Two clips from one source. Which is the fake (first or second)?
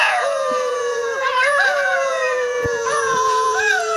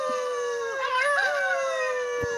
first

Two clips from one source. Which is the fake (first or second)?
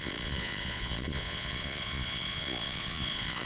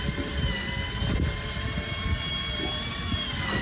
first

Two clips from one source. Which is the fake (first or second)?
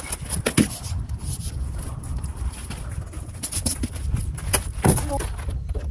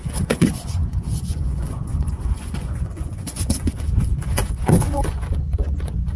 second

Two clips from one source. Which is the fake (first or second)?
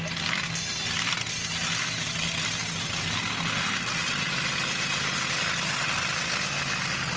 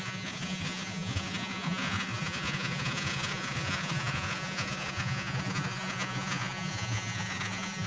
second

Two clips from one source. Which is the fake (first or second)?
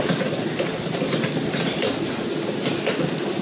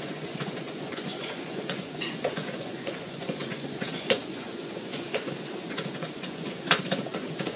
second